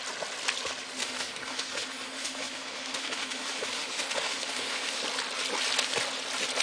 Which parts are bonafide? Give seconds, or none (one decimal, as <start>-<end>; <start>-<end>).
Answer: 0.0-1.0; 5.0-6.6